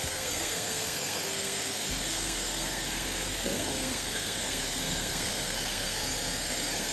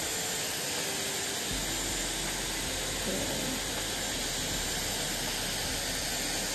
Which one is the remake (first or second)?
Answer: first